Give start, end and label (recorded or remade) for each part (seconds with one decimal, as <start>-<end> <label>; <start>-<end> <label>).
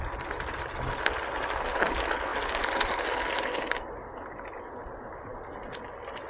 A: 0.0-5.3 recorded; 5.3-5.8 remade; 5.8-6.3 recorded